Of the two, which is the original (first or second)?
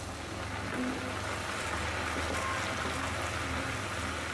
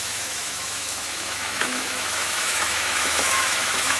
first